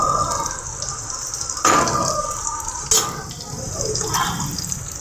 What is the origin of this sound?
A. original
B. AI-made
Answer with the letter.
A